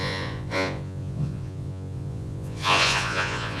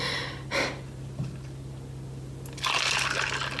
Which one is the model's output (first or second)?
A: first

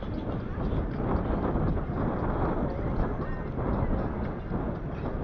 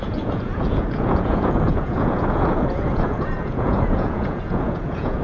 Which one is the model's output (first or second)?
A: second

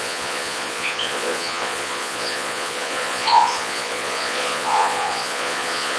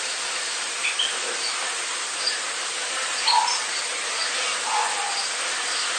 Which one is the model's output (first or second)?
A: first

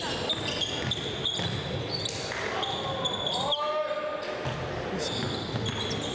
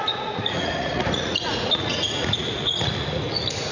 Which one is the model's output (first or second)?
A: second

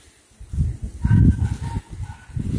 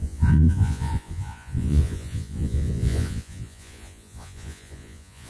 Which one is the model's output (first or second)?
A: second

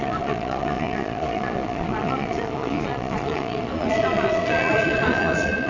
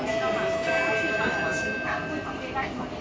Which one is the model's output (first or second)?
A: first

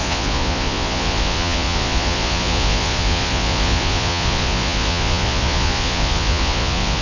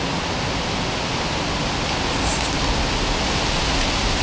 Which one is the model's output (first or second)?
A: first